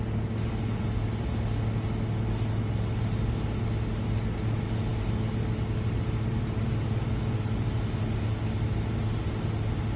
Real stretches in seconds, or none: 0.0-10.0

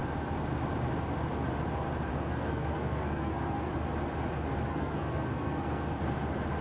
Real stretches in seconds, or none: 0.0-2.1; 3.7-4.7; 6.0-6.6